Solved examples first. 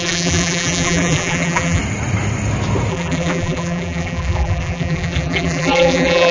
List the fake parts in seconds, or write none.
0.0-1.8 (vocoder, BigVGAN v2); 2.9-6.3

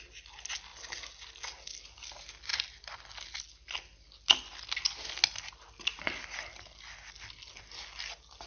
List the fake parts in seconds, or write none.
none

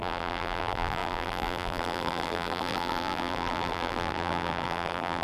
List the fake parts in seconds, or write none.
0.0-5.2 (vocoder, BigVGAN v2)

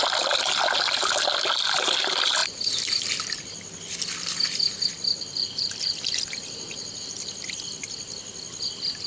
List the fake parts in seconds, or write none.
none

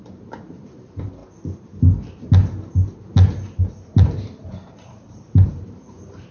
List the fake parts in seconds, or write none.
0.0-1.2 (vocoder, BigVGAN v2); 3.6-6.3

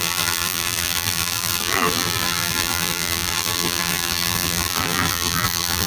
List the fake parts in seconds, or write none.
0.0-5.9 (vocoder, BigVGAN v2)

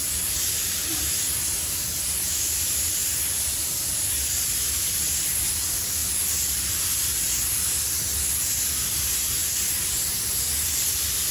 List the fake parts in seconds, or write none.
3.0-5.5 (vocoder, BigVGAN v2); 9.4-10.3